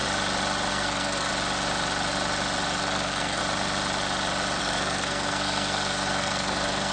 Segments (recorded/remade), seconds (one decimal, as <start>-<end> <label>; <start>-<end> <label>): 0.0-0.7 recorded; 0.7-1.3 remade; 1.3-2.8 recorded; 2.8-3.4 remade; 3.4-4.6 recorded; 4.6-6.9 remade